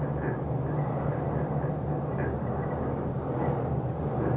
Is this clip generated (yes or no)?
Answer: no